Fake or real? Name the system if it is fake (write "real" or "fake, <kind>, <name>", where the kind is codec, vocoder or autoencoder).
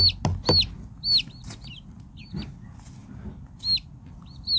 real